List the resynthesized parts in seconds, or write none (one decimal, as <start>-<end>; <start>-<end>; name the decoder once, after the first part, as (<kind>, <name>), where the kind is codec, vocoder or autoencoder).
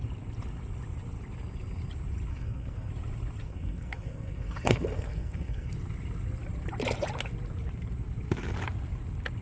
2.3-2.9 (codec, SNAC); 3.4-5.7